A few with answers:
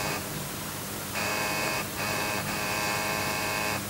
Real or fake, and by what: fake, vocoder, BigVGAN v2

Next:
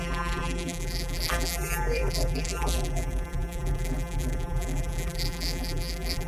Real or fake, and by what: fake, vocoder, BigVGAN v2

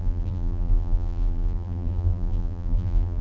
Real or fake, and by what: fake, vocoder, BigVGAN v2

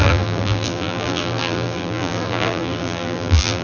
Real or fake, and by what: fake, vocoder, BigVGAN v2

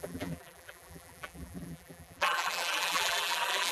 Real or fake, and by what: fake, vocoder, BigVGAN v2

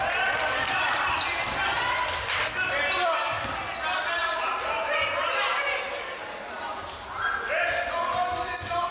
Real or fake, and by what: real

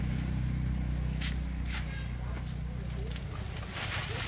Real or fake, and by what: real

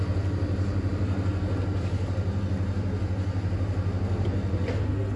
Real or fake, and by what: real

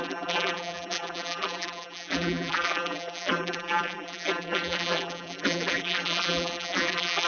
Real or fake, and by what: fake, vocoder, BigVGAN v2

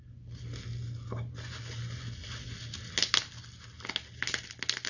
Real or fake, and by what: real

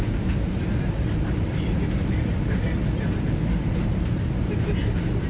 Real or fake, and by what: real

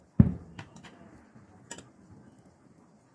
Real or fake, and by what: real